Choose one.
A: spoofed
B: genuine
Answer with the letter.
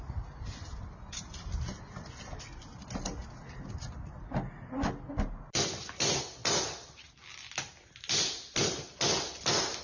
B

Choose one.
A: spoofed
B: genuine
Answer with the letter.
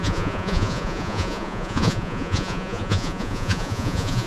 A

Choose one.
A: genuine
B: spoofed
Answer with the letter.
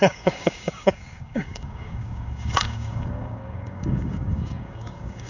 B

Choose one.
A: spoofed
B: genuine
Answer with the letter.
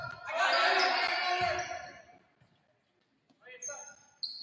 B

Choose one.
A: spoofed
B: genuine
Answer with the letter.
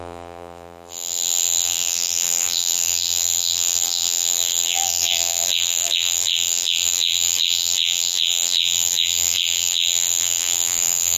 A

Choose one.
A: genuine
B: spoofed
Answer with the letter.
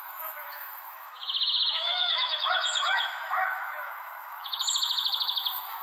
B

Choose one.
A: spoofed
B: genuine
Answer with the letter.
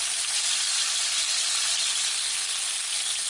B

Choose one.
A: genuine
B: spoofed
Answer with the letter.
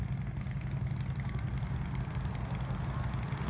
A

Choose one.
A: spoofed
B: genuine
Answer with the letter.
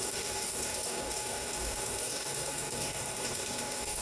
A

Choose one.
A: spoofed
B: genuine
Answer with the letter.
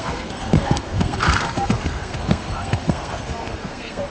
A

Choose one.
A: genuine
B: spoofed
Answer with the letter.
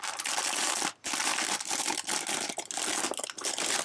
A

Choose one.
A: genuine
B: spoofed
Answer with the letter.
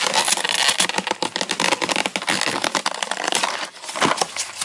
A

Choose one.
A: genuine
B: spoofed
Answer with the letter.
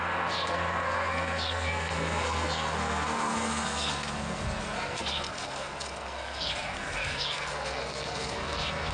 B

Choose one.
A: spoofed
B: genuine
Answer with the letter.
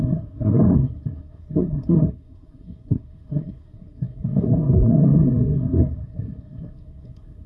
A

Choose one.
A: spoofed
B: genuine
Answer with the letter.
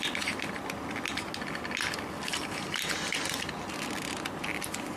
B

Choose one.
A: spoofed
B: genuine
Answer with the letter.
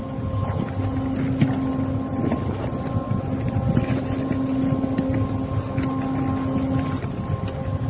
B